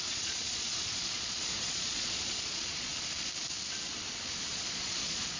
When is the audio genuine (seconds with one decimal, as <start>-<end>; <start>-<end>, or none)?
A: 2.9-4.5